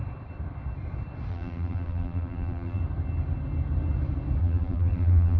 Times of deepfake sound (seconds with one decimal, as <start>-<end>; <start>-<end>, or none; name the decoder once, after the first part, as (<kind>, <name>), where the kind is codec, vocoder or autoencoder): 1.3-2.8 (vocoder, BigVGAN v2); 4.4-5.4